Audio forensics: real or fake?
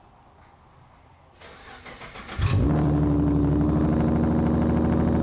real